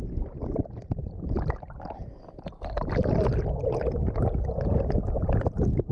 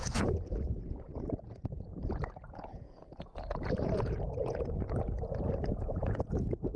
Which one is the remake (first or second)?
second